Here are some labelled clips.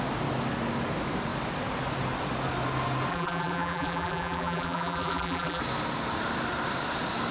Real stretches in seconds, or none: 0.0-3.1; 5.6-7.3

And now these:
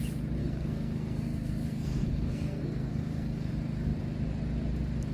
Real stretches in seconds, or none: 0.0-0.4; 3.5-5.1

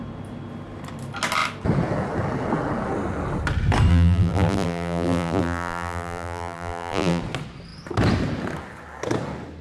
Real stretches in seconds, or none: 0.0-3.9; 7.2-9.6

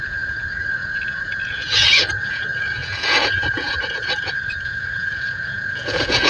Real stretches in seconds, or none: none

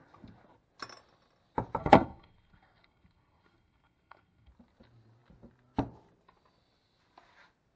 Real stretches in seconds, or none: 0.0-1.8; 4.5-7.8

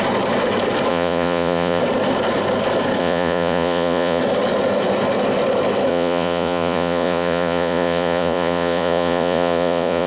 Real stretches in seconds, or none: 0.0-0.9; 1.8-3.0; 4.2-5.9

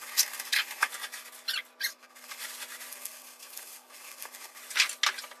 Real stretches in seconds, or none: 0.9-1.9; 2.4-2.9; 4.6-5.4

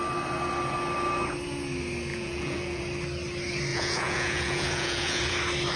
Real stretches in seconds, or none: 0.0-2.1; 2.8-3.7; 5.3-5.8